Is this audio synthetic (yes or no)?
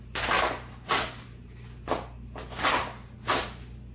no